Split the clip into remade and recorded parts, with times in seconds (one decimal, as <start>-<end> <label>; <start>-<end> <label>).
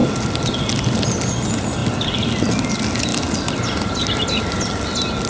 0.0-5.3 recorded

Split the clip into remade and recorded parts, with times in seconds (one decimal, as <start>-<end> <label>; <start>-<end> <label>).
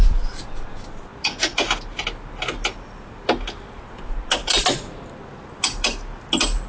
0.0-6.7 recorded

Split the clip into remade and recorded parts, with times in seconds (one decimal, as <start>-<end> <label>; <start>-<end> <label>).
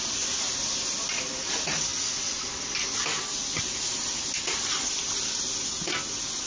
0.0-6.5 recorded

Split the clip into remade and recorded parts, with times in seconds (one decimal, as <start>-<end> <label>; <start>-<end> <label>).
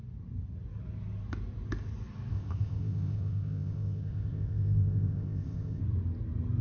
0.0-2.3 recorded; 2.3-5.8 remade; 5.8-6.6 recorded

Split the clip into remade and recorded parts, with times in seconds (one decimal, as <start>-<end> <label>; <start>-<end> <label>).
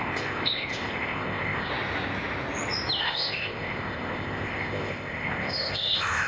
0.0-1.7 remade; 1.7-3.0 recorded; 3.0-6.3 remade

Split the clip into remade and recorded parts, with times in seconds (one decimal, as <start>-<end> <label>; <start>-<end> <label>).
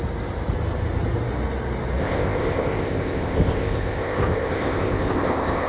0.0-2.0 recorded; 2.0-5.7 remade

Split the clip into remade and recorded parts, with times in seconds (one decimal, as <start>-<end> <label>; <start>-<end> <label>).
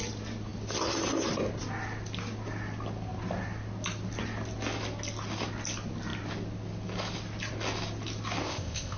0.0-8.4 recorded; 8.4-9.0 remade